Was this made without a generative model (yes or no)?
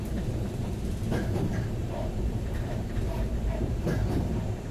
no